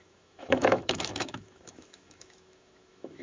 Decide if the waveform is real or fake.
fake